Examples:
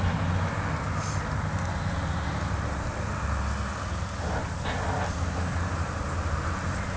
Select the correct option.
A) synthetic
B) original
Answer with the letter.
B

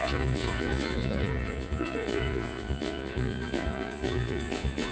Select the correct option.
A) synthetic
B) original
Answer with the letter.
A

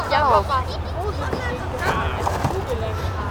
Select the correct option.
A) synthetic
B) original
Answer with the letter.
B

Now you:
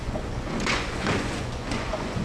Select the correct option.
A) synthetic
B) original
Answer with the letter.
A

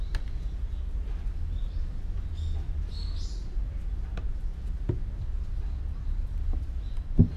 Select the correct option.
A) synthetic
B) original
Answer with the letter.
B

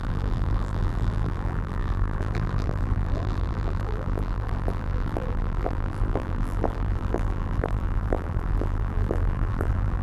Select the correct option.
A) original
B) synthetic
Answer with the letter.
B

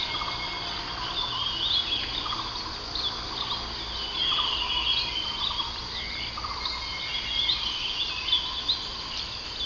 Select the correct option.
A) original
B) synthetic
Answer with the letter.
A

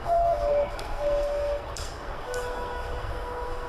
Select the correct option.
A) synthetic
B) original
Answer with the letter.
A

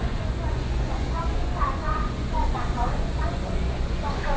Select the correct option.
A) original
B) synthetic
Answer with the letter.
B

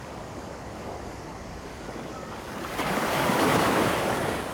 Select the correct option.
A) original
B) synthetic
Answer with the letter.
B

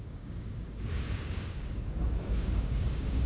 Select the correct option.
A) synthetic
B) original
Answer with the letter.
A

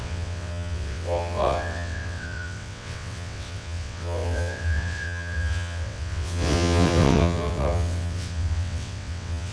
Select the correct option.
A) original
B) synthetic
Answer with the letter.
B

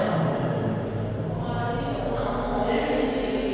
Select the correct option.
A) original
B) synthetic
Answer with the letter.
A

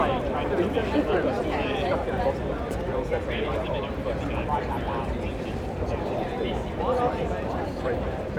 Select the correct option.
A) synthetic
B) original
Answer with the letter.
A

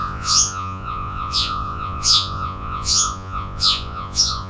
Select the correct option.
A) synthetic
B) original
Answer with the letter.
A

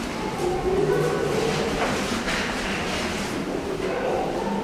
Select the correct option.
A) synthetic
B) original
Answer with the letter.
B